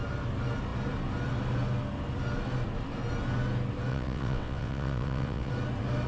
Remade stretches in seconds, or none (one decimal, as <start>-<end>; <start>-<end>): 3.9-5.5